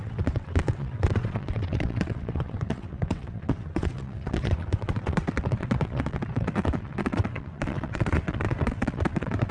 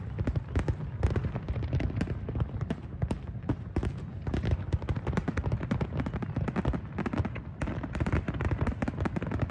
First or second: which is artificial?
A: first